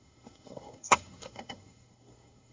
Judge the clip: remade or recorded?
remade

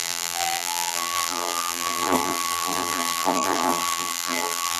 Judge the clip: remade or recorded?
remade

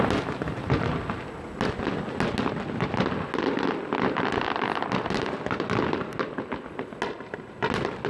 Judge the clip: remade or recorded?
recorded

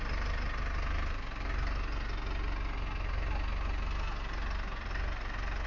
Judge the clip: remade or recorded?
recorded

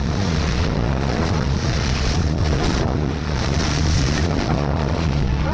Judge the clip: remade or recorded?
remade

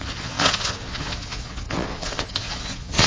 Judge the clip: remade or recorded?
remade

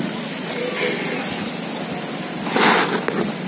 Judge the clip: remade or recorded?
recorded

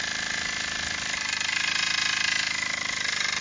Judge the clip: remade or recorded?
recorded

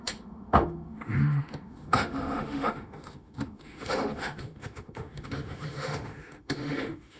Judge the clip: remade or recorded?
remade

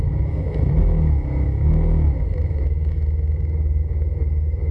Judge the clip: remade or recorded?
remade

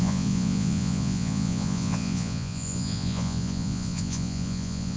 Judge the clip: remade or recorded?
remade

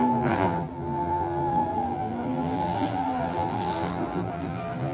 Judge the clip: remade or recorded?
remade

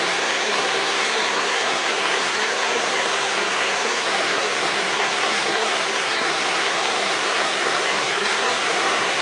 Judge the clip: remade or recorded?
remade